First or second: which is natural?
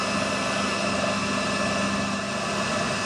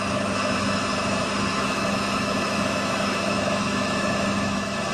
first